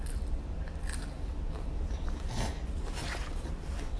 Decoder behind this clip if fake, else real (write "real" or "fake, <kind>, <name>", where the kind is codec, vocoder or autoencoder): real